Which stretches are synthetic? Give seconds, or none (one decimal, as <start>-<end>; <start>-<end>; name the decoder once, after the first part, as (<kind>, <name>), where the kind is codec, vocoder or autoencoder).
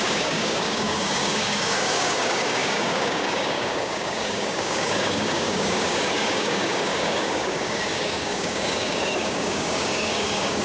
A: 0.0-10.6 (codec, DAC)